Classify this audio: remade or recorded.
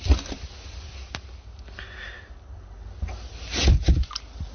recorded